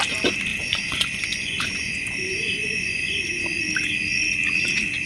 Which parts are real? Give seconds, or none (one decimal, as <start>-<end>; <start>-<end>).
0.0-0.5; 3.6-5.1